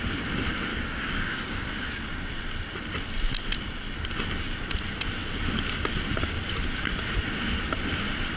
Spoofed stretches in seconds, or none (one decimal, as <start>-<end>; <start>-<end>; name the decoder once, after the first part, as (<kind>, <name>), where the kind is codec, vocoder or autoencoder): 0.7-1.7 (codec, DAC)